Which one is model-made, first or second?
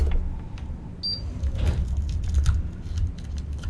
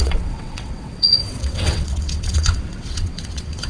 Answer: second